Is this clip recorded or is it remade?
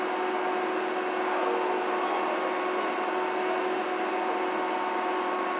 recorded